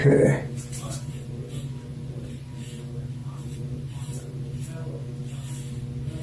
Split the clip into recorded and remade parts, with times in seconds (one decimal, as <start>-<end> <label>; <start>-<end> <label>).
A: 0.0-1.3 remade; 1.3-1.9 recorded; 1.9-2.8 remade; 2.8-3.2 recorded; 3.2-4.6 remade; 4.6-6.2 recorded